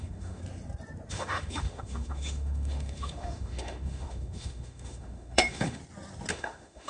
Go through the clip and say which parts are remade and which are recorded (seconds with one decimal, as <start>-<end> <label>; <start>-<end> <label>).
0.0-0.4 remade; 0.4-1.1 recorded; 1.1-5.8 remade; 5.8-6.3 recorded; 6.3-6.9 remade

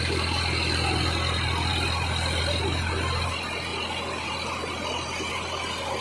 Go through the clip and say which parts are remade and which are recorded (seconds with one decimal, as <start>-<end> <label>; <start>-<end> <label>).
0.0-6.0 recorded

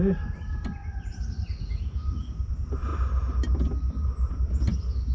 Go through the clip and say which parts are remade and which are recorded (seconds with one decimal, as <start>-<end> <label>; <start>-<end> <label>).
0.0-0.8 recorded; 0.8-2.4 remade; 2.4-5.1 recorded

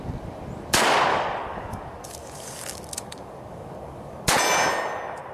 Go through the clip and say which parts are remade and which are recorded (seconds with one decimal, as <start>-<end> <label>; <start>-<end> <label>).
0.0-1.1 recorded; 1.1-4.2 remade; 4.2-5.3 recorded